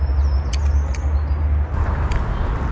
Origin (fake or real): real